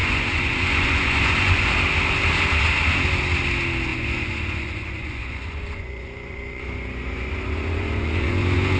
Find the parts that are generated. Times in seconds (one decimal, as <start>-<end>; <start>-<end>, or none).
0.0-1.7; 3.9-8.8